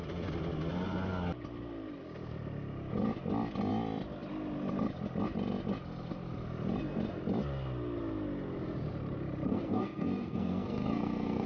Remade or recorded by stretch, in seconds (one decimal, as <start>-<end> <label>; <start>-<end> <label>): 0.0-9.5 recorded; 9.5-11.5 remade